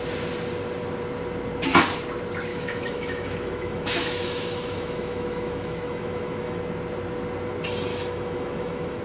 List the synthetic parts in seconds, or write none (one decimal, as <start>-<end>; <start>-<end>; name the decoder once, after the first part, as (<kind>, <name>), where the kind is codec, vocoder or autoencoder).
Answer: 2.5-6.6 (autoencoder, DAC-VAE); 7.9-9.0